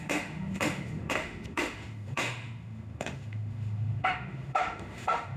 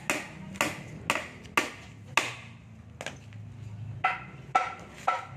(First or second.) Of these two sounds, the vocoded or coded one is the first